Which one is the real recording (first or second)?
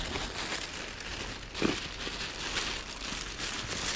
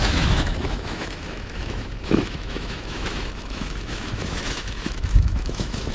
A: first